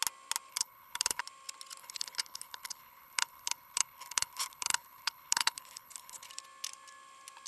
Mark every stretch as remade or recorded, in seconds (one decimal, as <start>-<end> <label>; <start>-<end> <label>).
0.0-0.5 recorded; 0.5-1.2 remade; 1.2-1.8 recorded; 1.8-6.3 remade; 6.3-7.5 recorded